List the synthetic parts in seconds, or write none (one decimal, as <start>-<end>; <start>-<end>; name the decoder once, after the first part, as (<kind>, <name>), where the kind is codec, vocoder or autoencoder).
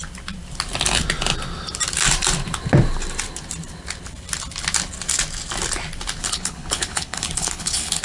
6.2-8.0 (codec, HILCodec)